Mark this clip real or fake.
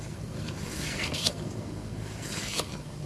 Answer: fake